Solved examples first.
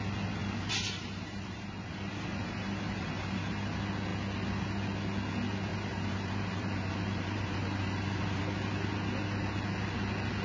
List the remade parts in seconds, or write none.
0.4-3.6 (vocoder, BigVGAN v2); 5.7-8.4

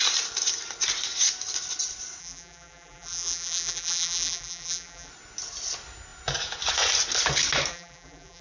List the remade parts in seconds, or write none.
2.2-5.1 (vocoder, BigVGAN v2); 7.7-8.4

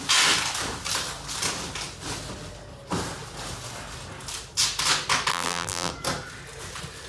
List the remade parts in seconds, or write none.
5.3-5.9 (vocoder, BigVGAN v2)

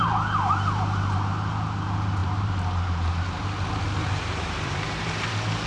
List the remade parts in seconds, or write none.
2.2-3.4 (vocoder, BigVGAN v2); 4.0-5.3

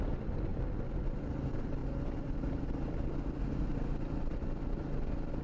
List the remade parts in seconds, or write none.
1.8-2.6 (vocoder, BigVGAN v2)